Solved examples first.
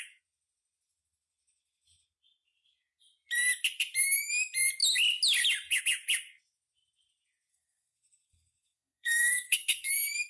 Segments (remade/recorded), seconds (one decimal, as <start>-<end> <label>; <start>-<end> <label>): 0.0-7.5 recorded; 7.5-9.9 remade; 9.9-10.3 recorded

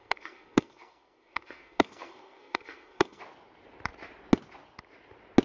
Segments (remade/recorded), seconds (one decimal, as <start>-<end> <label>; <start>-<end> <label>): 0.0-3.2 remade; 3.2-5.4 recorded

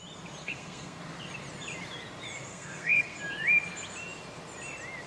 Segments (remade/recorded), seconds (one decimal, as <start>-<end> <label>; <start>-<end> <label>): 0.0-0.4 recorded; 0.4-1.0 remade; 1.0-2.5 recorded; 2.5-3.2 remade; 3.2-5.1 recorded

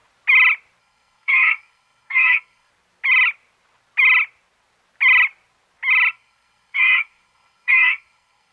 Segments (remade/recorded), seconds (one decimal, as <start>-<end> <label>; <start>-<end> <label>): 0.0-0.8 recorded; 0.8-2.7 remade; 2.7-6.1 recorded; 6.1-8.5 remade

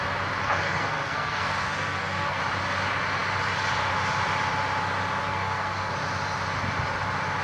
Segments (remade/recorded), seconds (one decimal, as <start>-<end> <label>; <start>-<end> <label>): 0.0-0.4 recorded; 0.4-2.4 remade; 2.4-5.2 recorded; 5.2-5.9 remade; 5.9-7.4 recorded